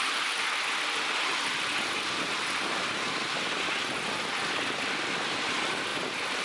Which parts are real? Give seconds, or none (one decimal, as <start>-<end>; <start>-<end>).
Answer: 0.0-6.4